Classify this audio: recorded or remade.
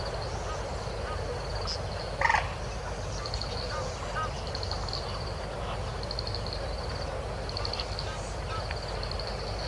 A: recorded